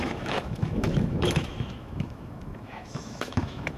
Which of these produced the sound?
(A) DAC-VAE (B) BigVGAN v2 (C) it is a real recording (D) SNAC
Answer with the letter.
A